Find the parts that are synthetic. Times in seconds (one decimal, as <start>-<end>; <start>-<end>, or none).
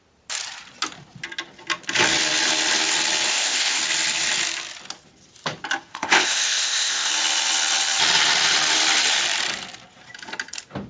3.3-3.8; 5.9-7.1